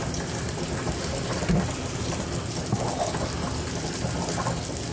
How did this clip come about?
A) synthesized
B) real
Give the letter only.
B